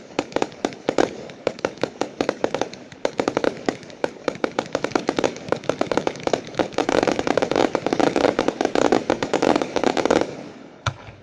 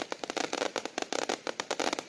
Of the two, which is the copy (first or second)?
first